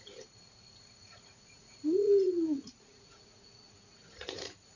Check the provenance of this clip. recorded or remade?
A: remade